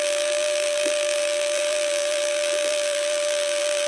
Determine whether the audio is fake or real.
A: fake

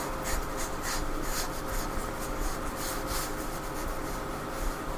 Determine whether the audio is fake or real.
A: real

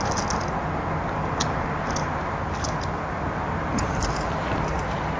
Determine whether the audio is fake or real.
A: real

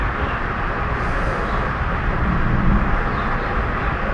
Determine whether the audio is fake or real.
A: real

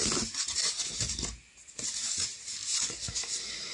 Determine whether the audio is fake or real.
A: real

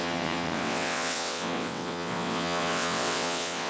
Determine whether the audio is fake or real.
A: fake